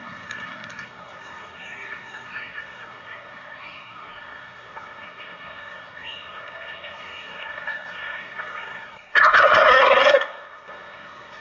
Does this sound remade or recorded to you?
remade